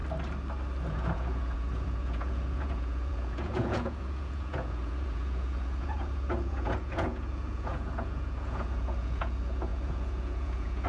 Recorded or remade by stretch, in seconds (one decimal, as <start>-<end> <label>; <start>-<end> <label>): 0.0-0.9 recorded; 0.9-10.9 remade